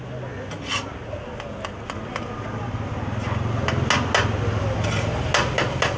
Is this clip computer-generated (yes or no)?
no